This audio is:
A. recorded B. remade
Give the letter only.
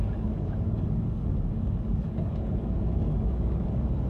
B